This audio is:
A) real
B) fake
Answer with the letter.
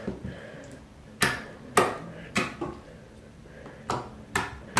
A